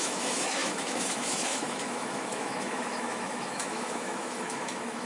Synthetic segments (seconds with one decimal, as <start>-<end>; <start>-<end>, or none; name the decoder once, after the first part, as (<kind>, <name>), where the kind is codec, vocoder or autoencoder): 0.0-5.1 (autoencoder, DAC-VAE)